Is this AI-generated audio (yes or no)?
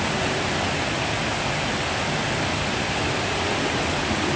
no